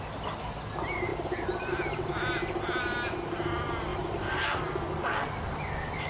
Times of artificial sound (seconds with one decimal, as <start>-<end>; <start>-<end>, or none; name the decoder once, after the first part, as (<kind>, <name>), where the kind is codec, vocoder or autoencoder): 3.9-4.6 (vocoder, BigVGAN v2)